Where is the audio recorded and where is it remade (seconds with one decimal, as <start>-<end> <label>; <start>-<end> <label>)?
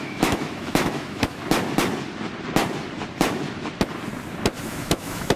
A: 0.0-1.4 remade; 1.4-4.6 recorded; 4.6-5.4 remade